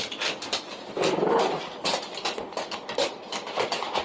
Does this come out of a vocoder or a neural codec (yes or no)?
no